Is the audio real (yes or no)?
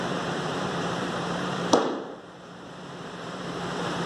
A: no